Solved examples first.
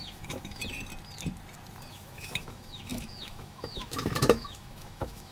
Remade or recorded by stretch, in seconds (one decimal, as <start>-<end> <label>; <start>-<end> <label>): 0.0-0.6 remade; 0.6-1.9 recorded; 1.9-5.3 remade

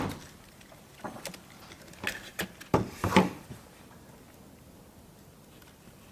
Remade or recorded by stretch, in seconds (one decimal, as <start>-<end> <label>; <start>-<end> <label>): 0.0-6.1 recorded

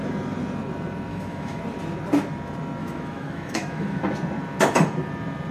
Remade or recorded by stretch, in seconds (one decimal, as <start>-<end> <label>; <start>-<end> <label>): 0.0-1.1 recorded; 1.1-1.6 remade; 1.6-2.8 recorded; 2.8-4.0 remade; 4.0-5.5 recorded

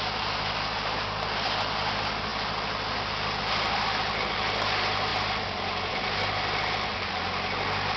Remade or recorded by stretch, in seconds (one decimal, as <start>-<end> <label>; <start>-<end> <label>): 0.0-8.0 recorded

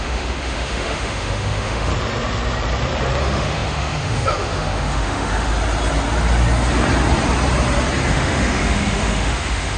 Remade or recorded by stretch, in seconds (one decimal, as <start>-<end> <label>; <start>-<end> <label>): 0.0-1.9 remade; 1.9-3.2 recorded; 3.2-5.5 remade; 5.5-8.1 recorded; 8.1-9.8 remade

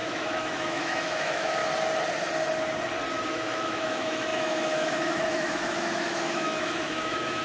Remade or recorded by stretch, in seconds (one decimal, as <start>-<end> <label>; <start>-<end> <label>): 0.0-1.6 remade; 1.6-3.3 recorded; 3.3-7.4 remade